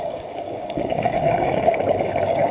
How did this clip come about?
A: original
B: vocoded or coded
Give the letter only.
B